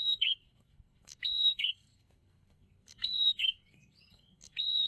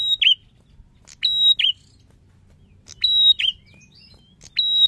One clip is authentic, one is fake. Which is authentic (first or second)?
second